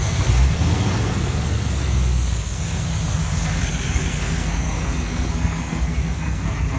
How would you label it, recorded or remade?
remade